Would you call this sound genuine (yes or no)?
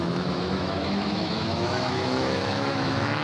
no